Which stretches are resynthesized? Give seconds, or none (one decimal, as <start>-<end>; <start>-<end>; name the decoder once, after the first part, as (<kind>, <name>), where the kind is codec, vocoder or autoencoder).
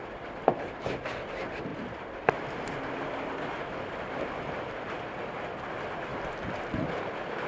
0.0-6.1 (vocoder, BigVGAN v2); 6.6-7.5